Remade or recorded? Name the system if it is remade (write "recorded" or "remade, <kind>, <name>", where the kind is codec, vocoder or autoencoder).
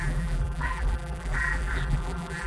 remade, vocoder, BigVGAN v2